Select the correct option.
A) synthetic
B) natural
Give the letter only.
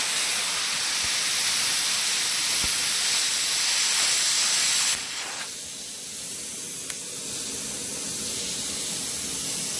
B